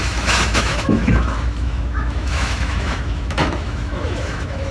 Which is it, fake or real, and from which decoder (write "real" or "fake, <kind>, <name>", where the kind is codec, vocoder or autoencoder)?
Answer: fake, autoencoder, DAC-VAE